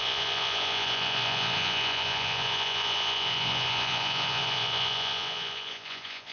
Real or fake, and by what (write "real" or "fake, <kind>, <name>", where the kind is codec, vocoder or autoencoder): fake, vocoder, Vocos